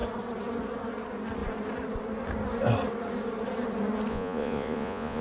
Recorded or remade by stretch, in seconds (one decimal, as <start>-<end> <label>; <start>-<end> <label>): 0.0-4.1 recorded; 4.1-5.2 remade